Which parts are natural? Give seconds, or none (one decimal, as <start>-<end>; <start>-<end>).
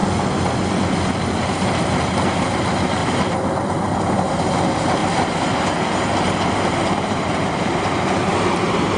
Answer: 0.0-1.2; 3.0-4.3